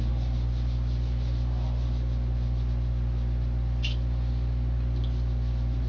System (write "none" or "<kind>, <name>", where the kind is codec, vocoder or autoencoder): none